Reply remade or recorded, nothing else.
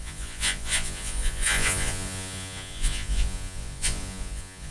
remade